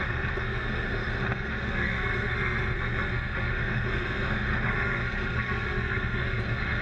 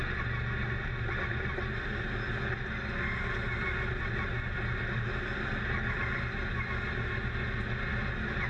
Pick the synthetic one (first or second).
first